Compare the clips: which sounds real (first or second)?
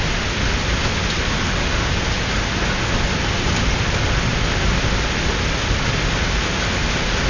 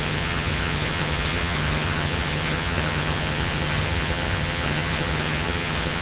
first